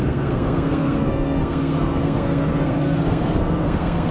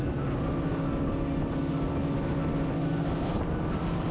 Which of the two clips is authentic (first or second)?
second